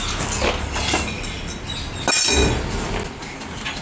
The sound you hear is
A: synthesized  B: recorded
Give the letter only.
B